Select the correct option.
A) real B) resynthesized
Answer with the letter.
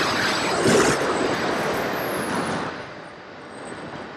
A